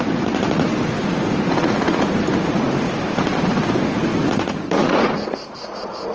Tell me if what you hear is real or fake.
fake